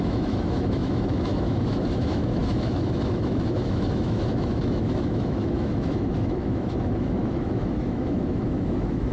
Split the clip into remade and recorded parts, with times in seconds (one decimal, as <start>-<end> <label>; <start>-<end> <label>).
0.0-9.1 remade